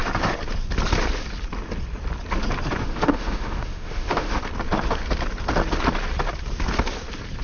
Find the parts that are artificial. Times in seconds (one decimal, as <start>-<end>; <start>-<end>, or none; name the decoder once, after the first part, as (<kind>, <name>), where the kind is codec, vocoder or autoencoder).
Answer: 2.8-4.4 (autoencoder, DAC-VAE)